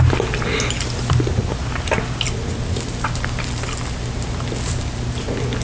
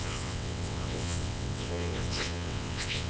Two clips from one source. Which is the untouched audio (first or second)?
first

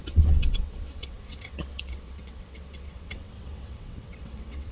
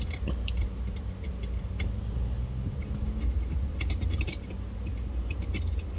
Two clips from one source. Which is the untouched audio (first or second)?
second